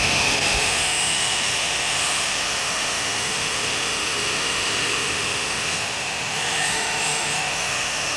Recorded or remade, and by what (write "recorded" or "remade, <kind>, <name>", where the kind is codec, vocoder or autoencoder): remade, autoencoder, DAC-VAE